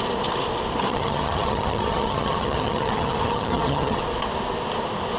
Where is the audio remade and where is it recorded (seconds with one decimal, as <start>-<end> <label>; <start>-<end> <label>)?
0.0-0.9 recorded; 0.9-4.0 remade; 4.0-5.2 recorded